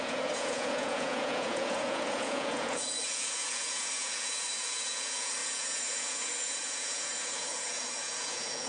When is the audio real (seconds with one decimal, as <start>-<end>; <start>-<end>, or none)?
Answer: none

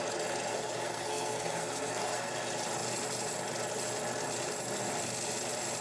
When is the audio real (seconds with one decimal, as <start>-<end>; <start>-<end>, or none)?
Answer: 0.0-0.5; 2.3-5.8

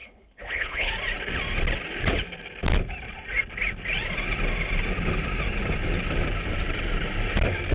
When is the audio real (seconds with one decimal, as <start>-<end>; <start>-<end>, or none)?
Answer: 0.9-7.7

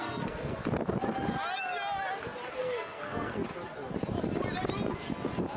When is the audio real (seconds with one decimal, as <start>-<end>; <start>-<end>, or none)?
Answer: 0.6-2.6; 3.4-5.6